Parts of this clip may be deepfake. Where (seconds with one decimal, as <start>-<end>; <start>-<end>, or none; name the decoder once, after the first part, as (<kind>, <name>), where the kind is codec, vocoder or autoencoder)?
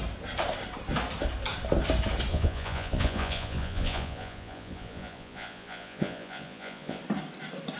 2.3-7.0 (vocoder, Vocos)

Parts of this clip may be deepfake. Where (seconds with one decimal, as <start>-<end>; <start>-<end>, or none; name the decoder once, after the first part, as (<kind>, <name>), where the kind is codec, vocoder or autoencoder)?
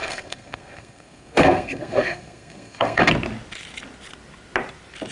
0.0-3.1 (codec, SNAC)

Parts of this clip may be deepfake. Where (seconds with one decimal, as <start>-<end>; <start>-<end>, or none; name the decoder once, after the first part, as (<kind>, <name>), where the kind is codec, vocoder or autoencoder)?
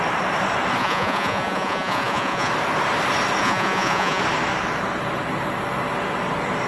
0.8-2.5 (vocoder, Vocos); 3.4-4.2